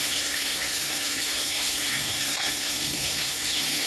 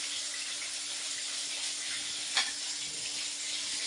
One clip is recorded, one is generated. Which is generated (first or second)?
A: first